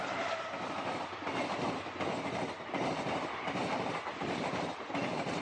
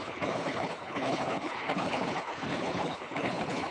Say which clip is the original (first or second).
first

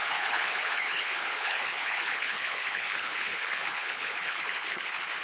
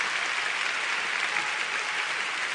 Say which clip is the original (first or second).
second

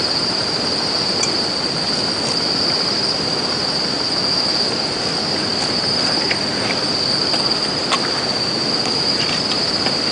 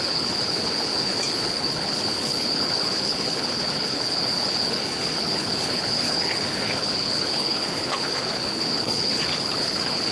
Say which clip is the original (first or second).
first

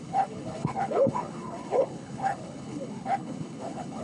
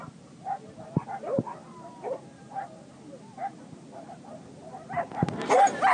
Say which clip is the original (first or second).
second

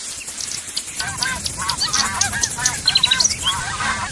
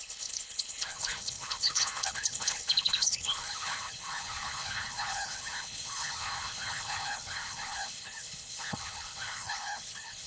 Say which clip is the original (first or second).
first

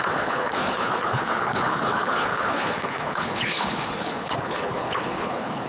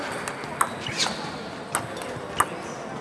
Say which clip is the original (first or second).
second